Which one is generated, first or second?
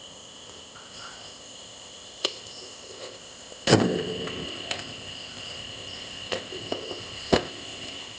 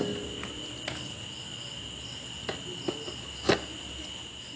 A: first